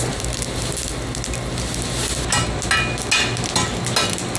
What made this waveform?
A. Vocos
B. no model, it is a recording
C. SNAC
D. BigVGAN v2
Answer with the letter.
B